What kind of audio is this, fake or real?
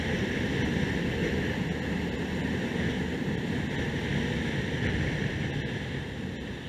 real